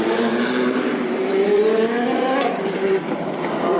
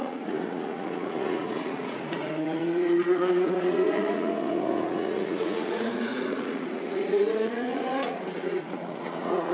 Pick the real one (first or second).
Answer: first